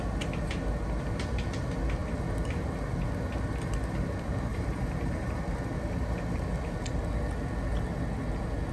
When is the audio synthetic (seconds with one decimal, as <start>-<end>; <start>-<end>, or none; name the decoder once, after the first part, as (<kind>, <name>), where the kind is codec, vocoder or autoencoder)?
4.5-5.4 (vocoder, BigVGAN v2)